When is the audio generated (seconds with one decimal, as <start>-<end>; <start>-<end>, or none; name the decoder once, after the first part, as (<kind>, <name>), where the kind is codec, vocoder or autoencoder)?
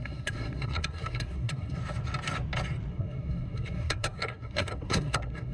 0.0-1.8 (codec, SNAC); 2.9-5.5